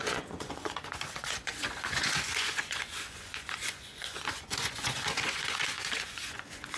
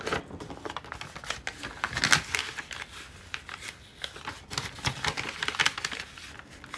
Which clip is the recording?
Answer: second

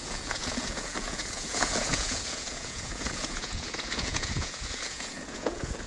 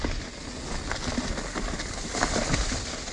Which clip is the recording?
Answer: second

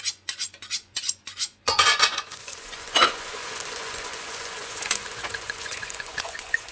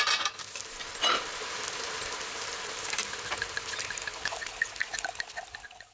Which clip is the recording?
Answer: second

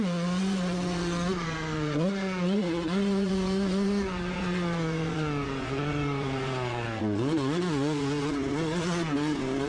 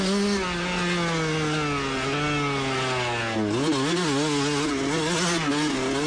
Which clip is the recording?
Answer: second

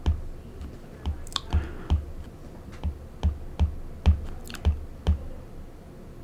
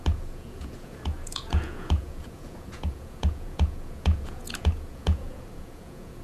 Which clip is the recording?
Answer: first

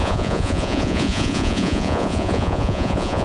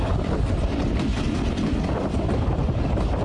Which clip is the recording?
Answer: second